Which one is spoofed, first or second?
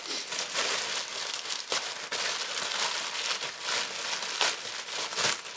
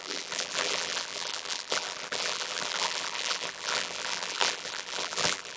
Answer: second